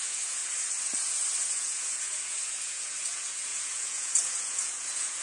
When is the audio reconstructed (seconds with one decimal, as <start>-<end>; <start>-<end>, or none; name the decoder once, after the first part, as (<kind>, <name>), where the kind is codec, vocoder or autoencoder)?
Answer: 0.0-0.4 (vocoder, Vocos); 1.5-5.2